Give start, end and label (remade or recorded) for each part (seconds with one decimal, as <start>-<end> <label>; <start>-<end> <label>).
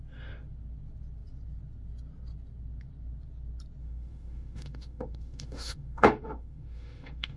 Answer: 0.0-3.8 recorded; 3.8-7.4 remade